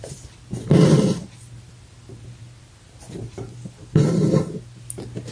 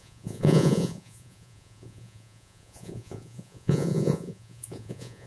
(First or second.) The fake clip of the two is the second